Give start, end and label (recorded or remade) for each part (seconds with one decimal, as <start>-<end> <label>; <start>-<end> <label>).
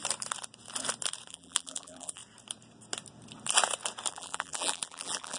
0.0-1.3 recorded; 1.3-2.2 remade; 2.2-4.1 recorded; 4.1-5.4 remade